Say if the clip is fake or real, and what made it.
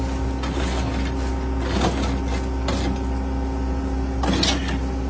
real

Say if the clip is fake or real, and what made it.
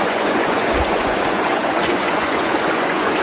fake, vocoder, Vocos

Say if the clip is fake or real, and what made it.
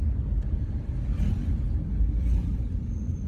real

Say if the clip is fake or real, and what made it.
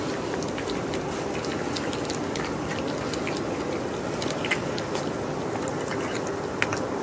real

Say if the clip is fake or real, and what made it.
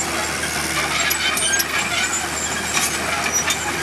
real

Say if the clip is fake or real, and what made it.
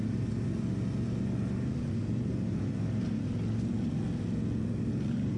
real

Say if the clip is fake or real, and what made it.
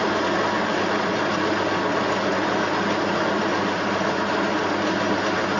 real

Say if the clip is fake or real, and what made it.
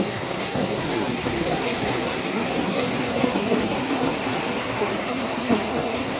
fake, codec, SNAC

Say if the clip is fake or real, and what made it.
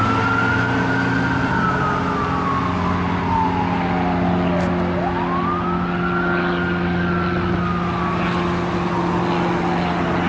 real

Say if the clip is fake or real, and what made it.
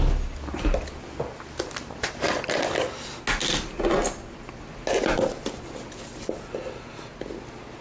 real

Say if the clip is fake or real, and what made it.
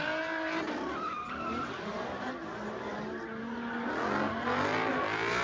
real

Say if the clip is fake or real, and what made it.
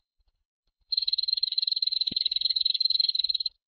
fake, codec, HILCodec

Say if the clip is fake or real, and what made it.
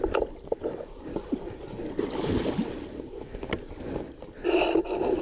real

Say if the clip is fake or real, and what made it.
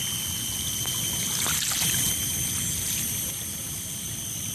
real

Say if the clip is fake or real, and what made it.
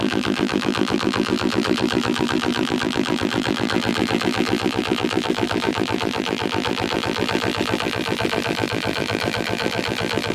fake, vocoder, BigVGAN v2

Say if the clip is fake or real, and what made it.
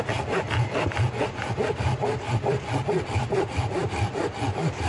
real